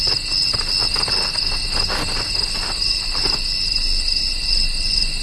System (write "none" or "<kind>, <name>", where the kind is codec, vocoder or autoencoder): none